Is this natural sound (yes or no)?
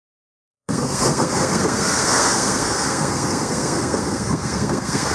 no